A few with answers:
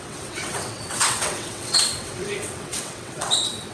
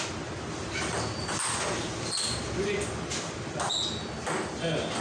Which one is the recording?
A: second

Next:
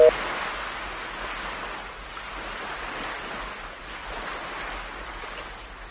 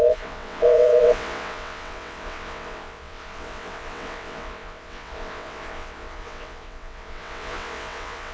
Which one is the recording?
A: first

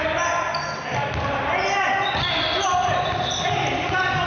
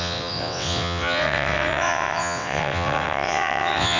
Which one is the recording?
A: first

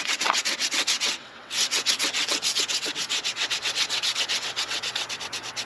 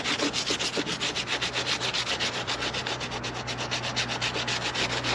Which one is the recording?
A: second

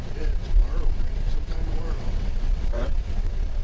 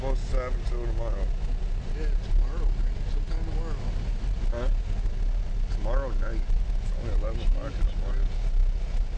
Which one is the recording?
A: second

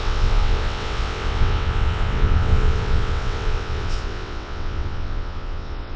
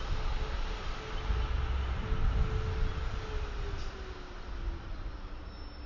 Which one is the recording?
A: second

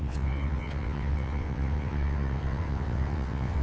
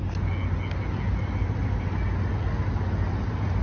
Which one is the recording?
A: second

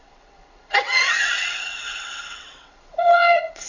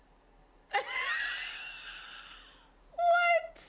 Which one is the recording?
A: second